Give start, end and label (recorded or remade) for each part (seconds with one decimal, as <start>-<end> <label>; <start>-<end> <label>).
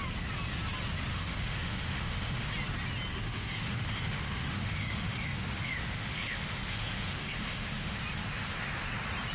0.0-1.1 recorded; 1.1-2.5 remade; 2.5-3.1 recorded; 3.1-8.0 remade; 8.0-9.3 recorded